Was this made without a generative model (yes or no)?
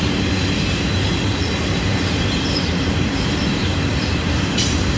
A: no